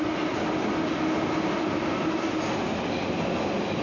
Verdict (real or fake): real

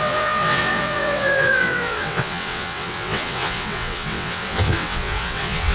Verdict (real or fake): fake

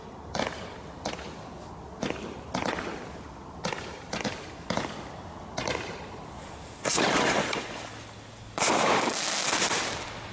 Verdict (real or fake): real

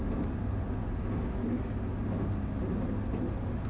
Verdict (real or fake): real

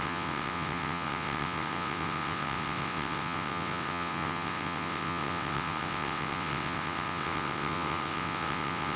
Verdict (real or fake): fake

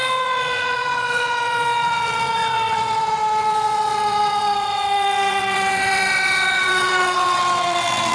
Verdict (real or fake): fake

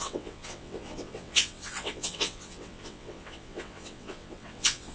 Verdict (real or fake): fake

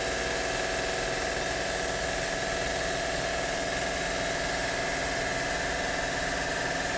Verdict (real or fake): real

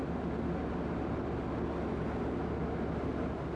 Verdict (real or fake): real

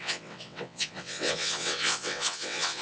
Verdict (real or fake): fake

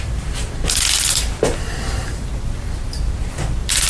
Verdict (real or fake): real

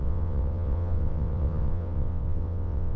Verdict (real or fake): fake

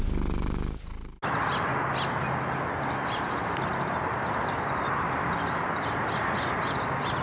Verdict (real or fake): real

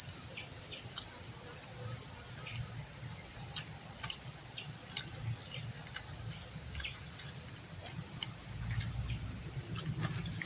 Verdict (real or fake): real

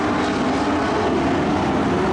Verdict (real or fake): real